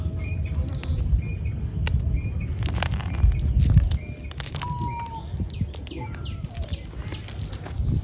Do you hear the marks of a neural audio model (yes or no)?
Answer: no